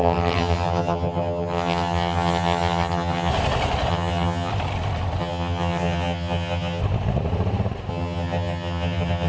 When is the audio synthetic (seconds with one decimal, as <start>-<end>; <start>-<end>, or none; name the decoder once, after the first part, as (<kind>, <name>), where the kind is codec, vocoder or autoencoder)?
0.0-3.3 (vocoder, HiFi-GAN); 3.9-4.5; 5.2-6.8; 7.9-9.3